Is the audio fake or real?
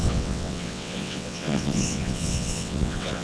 fake